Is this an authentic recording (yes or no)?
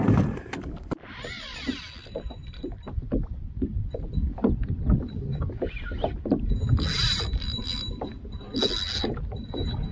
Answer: yes